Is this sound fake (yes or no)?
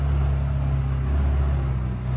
no